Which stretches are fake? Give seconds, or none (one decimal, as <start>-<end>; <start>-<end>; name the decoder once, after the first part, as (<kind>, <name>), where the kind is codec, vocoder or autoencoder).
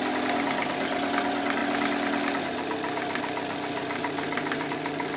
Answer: none